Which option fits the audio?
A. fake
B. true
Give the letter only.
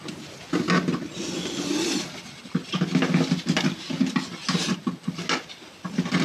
B